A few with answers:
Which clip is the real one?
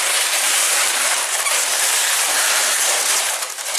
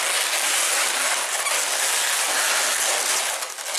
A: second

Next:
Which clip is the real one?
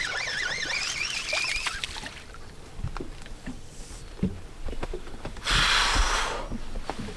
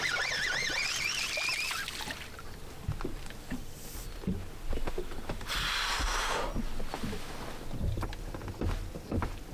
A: second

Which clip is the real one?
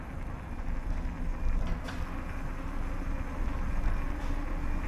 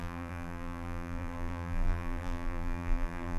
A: first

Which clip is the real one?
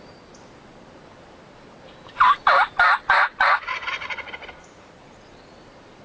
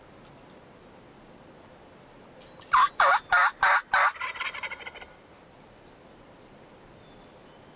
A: second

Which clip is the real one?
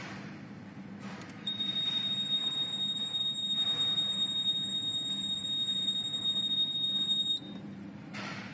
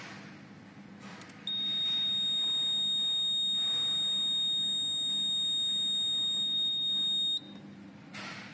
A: second